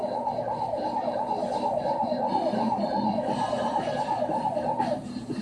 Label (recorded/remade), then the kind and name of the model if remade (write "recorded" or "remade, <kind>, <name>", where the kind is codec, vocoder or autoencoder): remade, vocoder, BigVGAN v2